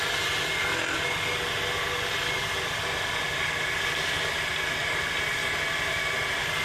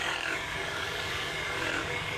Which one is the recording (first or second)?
first